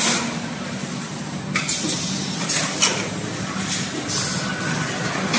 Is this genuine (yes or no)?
yes